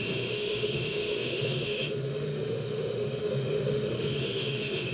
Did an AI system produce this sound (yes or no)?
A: yes